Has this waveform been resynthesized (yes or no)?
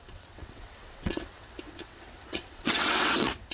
yes